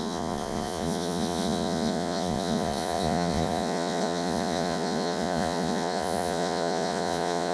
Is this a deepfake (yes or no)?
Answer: yes